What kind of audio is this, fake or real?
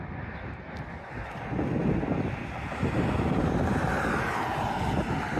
real